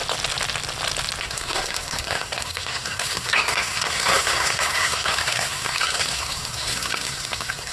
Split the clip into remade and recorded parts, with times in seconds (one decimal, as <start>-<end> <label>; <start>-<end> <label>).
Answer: 0.0-1.2 recorded; 1.2-7.7 remade

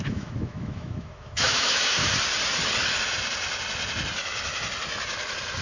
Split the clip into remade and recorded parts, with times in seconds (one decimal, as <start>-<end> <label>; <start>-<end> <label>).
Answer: 0.0-2.0 remade; 2.0-5.6 recorded

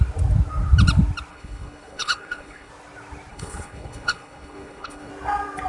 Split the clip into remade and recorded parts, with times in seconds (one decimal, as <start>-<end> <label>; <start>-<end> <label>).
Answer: 0.0-1.3 recorded; 1.3-2.7 remade; 2.7-3.3 recorded; 3.3-5.1 remade; 5.1-5.7 recorded

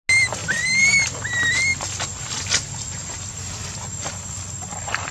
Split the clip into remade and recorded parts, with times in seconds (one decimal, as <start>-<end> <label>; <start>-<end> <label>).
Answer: 0.0-0.4 recorded; 0.4-1.1 remade; 1.1-5.1 recorded

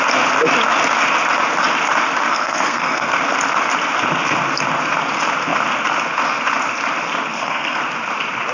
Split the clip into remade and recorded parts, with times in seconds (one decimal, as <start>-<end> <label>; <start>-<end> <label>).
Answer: 0.0-2.3 recorded; 2.3-3.1 remade; 3.1-7.3 recorded; 7.3-7.8 remade; 7.8-8.5 recorded

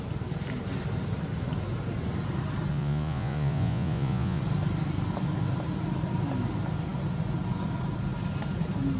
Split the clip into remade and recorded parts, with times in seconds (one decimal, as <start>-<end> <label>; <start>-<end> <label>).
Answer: 0.0-2.7 recorded; 2.7-4.4 remade; 4.4-9.0 recorded

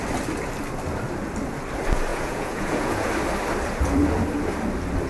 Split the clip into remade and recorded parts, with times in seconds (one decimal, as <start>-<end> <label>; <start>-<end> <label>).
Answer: 0.0-2.1 recorded; 2.1-3.1 remade; 3.1-5.1 recorded

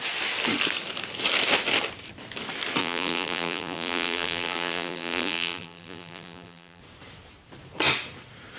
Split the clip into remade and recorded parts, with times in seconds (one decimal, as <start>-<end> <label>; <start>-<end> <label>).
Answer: 0.0-2.8 recorded; 2.8-6.8 remade; 6.8-8.6 recorded